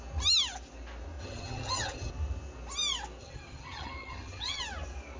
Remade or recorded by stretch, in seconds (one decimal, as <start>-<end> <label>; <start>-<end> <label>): 0.0-1.2 recorded; 1.2-2.1 remade; 2.1-3.2 recorded; 3.2-4.6 remade; 4.6-5.2 recorded